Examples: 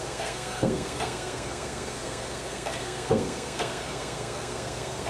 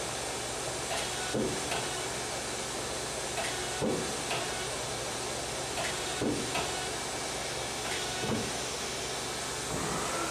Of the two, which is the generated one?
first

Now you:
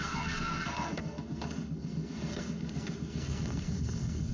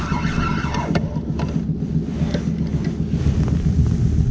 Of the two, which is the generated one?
first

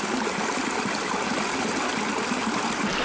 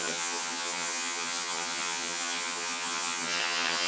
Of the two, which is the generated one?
second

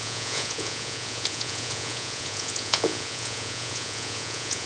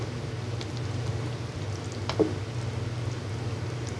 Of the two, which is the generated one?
first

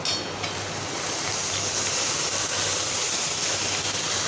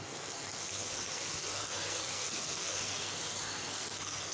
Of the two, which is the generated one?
second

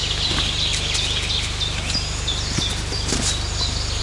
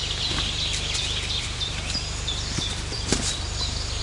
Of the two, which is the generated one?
second